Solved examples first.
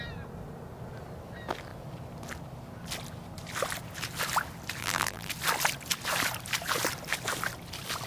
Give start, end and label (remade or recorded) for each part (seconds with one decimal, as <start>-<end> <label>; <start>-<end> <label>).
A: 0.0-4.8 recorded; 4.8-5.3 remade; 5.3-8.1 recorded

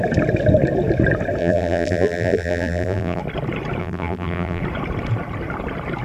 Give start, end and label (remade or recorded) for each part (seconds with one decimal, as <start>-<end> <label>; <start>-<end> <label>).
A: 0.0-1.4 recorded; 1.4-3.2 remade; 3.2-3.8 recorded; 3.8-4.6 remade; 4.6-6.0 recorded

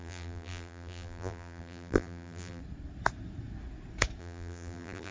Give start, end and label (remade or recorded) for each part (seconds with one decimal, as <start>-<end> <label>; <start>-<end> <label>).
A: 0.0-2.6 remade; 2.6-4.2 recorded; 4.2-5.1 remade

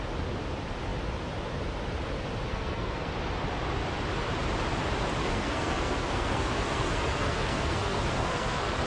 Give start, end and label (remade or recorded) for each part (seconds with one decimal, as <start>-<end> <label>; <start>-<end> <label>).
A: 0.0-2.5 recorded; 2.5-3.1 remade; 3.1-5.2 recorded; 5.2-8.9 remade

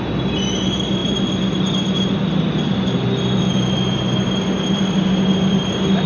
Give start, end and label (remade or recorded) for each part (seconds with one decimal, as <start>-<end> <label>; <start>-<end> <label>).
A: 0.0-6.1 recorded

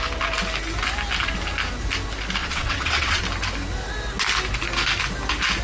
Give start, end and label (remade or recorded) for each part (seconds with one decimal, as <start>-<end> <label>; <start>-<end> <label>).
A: 0.0-2.4 recorded; 2.4-3.2 remade; 3.2-5.6 recorded

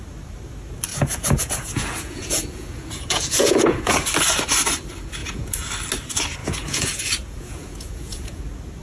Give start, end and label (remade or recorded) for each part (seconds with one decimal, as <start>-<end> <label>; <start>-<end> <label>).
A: 0.0-0.9 recorded; 0.9-4.1 remade; 4.1-5.2 recorded; 5.2-5.7 remade; 5.7-6.4 recorded; 6.4-8.4 remade; 8.4-8.8 recorded

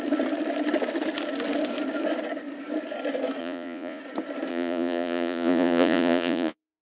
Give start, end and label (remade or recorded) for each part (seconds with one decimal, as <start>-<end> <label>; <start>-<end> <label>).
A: 0.0-3.4 recorded; 3.4-4.0 remade; 4.0-4.5 recorded; 4.5-6.8 remade